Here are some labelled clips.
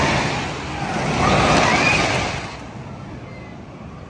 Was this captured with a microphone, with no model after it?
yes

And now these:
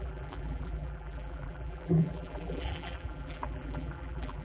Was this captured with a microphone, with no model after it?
no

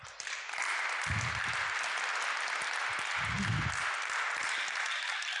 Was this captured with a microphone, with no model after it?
yes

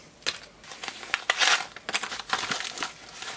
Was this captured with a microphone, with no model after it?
yes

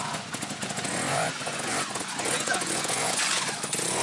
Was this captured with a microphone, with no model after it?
no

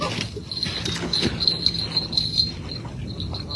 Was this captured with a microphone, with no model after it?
yes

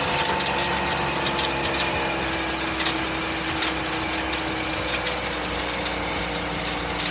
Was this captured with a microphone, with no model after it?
yes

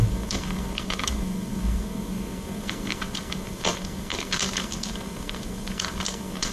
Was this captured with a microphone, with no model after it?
no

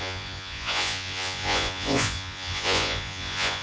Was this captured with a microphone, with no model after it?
no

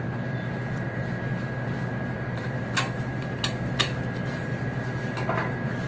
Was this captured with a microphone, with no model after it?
yes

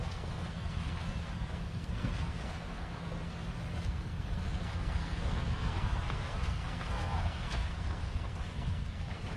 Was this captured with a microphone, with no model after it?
no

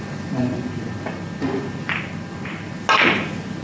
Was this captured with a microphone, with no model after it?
yes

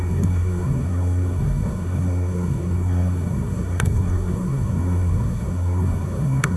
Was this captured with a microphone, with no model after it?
no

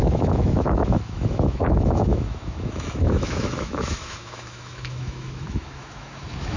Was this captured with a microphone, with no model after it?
no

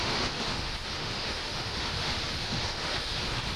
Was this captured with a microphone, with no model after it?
no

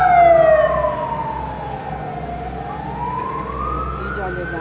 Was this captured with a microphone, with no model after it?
yes